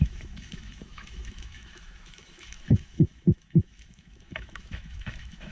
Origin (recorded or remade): remade